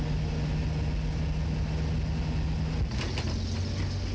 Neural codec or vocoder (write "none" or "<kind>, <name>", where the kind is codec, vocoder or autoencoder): none